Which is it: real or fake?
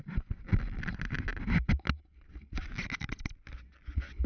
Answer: real